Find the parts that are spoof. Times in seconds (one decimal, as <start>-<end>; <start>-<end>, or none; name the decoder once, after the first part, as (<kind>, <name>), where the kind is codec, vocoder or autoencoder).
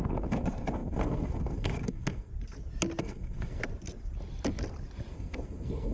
0.0-2.3 (codec, SNAC); 3.0-3.6; 5.1-5.9